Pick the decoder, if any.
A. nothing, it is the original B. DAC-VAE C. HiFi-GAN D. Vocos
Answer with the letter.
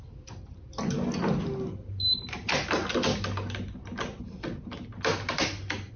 A